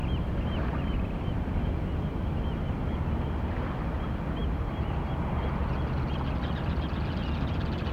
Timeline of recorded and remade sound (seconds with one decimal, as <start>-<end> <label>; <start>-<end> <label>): 0.0-4.4 recorded; 4.4-5.1 remade; 5.1-7.9 recorded